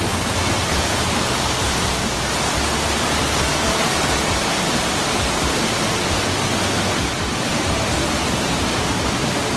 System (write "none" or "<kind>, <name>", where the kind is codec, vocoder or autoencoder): none